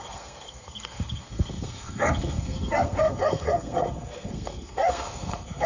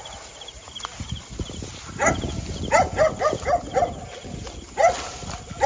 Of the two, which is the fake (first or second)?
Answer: first